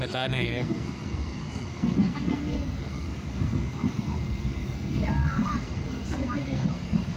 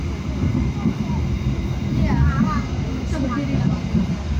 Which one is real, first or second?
second